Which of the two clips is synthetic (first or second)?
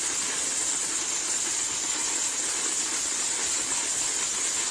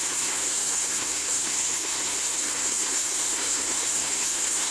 second